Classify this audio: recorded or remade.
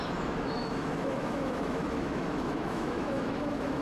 remade